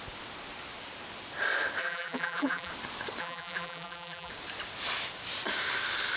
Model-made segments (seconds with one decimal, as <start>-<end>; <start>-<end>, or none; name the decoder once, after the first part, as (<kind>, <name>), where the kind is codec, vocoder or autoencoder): 1.8-2.7 (vocoder, BigVGAN v2); 3.2-4.3